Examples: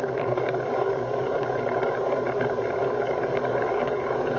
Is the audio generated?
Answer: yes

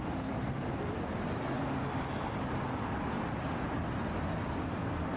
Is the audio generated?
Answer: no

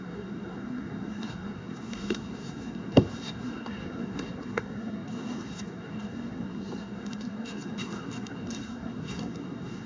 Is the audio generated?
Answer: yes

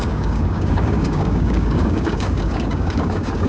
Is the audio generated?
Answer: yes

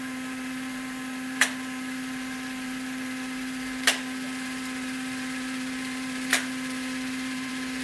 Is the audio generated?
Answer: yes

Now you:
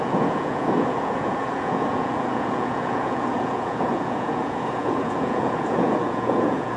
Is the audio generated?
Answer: yes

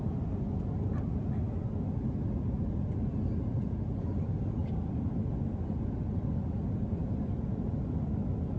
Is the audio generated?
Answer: no